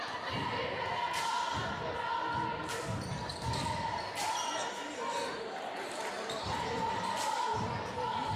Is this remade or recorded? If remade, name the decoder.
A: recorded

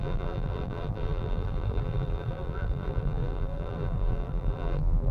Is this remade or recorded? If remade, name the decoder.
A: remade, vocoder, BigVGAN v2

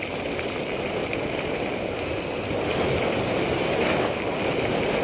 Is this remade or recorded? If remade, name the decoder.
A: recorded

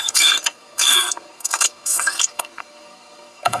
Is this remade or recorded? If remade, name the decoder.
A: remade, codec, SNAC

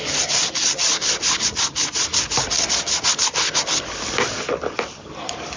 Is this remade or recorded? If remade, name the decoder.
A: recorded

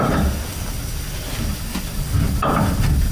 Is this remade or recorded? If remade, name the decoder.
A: recorded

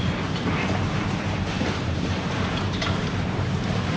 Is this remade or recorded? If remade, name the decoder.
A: remade, vocoder, BigVGAN v2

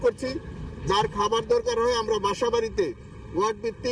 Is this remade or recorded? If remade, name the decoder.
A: recorded